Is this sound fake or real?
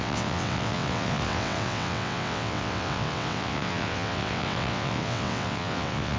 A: fake